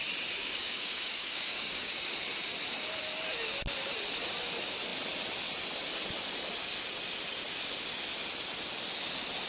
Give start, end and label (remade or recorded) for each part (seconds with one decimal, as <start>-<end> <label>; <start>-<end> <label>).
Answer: 0.0-0.4 recorded; 0.4-1.9 remade; 1.9-9.5 recorded

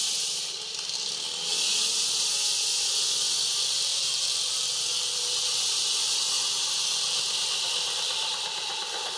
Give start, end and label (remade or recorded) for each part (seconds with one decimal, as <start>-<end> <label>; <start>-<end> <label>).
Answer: 0.0-9.2 recorded

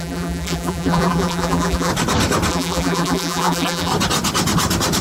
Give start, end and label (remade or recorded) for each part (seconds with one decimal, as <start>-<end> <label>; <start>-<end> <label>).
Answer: 0.0-1.9 remade; 1.9-2.5 recorded; 2.5-3.9 remade; 3.9-5.0 recorded

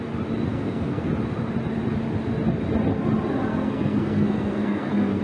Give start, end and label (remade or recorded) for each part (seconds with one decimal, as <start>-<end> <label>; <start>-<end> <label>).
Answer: 0.0-0.5 recorded; 0.5-1.1 remade; 1.1-3.5 recorded; 3.5-5.2 remade

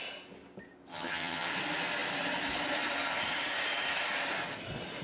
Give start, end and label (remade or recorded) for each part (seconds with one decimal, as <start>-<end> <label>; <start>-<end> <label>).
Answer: 0.0-0.9 recorded; 0.9-1.5 remade; 1.5-5.0 recorded

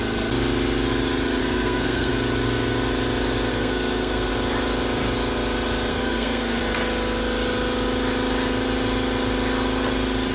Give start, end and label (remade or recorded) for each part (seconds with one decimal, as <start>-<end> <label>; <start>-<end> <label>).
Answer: 0.0-1.4 recorded; 1.4-2.1 remade; 2.1-3.5 recorded; 3.5-4.3 remade; 4.3-5.9 recorded; 5.9-6.6 remade; 6.6-10.3 recorded

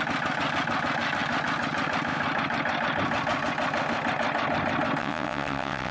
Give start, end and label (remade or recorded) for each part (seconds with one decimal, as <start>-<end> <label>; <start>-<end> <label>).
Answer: 0.0-5.0 recorded; 5.0-5.9 remade